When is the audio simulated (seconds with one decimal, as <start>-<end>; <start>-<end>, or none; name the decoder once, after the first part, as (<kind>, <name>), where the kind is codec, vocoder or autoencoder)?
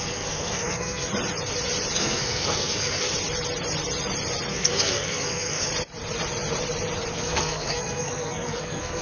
0.0-1.1 (codec, SNAC); 2.0-3.1; 4.5-5.7; 7.1-9.0